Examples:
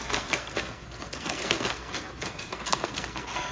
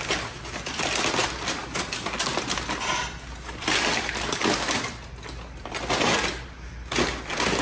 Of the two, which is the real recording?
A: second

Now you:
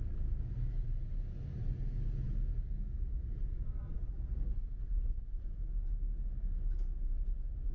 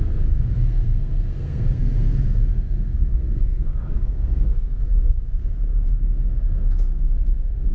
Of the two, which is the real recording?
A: first